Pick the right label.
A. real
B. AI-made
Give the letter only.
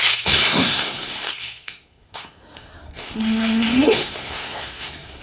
B